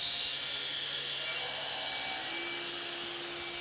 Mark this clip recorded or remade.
recorded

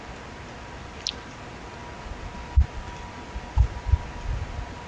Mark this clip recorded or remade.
recorded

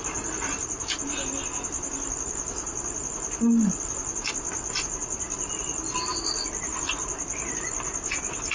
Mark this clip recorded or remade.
recorded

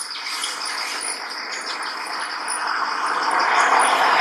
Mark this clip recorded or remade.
recorded